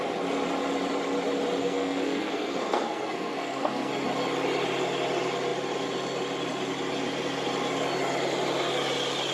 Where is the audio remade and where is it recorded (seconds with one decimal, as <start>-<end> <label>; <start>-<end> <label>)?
0.0-1.6 recorded; 1.6-3.9 remade; 3.9-9.3 recorded